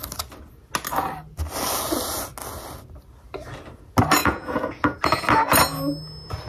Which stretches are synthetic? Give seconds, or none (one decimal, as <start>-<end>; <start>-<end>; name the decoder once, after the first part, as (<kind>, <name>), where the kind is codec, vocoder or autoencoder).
4.2-5.0 (vocoder, Vocos)